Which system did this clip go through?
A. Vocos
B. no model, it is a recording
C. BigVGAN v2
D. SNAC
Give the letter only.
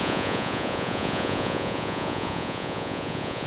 A